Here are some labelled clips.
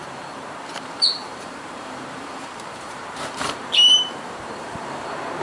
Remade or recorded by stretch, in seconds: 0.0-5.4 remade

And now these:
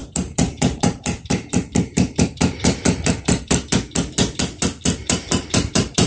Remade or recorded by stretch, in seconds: 0.0-3.7 remade; 3.7-5.0 recorded; 5.0-6.1 remade

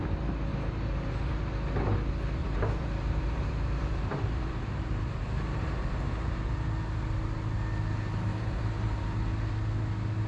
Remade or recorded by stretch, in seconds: 0.0-0.5 recorded; 0.5-1.4 remade; 1.4-2.4 recorded; 2.4-6.7 remade; 6.7-8.3 recorded; 8.3-9.0 remade; 9.0-10.3 recorded